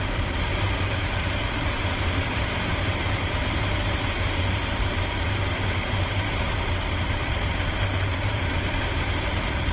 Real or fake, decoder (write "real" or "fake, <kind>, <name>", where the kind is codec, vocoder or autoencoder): fake, vocoder, BigVGAN v2